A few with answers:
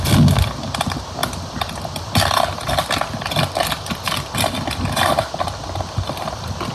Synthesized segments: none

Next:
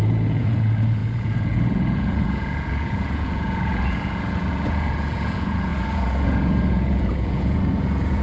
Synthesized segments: 0.0-8.2

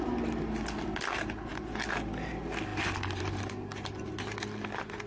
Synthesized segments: 1.5-2.3; 3.7-5.1

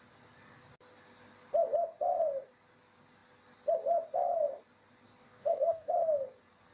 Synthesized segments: 5.2-5.9

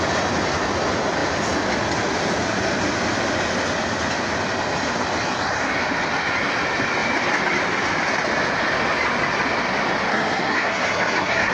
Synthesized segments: 10.1-11.5

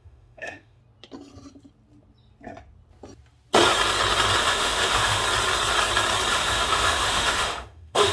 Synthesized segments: 0.0-0.8; 4.4-5.2; 6.3-8.1

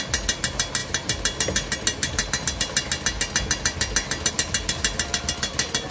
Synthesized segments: none

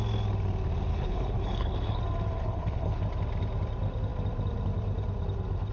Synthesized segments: 0.9-2.0; 2.4-3.0